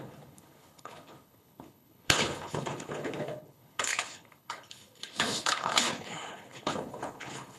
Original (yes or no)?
no